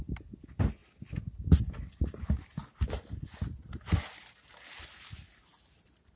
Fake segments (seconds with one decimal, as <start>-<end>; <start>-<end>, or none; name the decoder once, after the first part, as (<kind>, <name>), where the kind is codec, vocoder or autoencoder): none